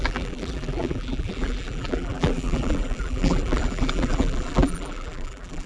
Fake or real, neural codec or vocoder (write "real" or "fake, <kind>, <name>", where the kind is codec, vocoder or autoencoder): fake, vocoder, BigVGAN v2